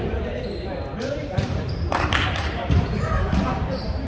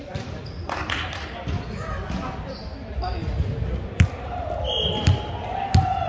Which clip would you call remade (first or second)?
first